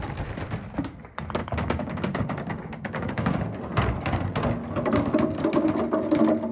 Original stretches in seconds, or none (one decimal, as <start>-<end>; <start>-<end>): 0.0-1.4; 3.6-6.5